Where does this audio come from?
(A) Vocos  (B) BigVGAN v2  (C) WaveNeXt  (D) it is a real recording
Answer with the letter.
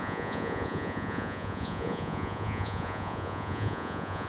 A